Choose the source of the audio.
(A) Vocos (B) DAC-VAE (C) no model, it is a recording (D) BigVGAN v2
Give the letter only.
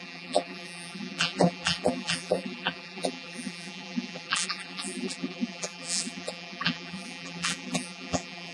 D